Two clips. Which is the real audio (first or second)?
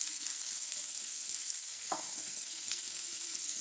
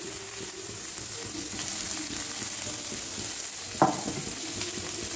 second